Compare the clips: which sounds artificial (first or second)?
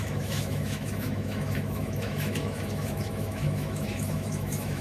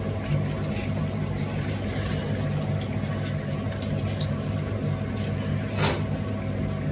first